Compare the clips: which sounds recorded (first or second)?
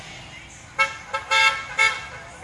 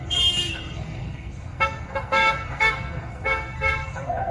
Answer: first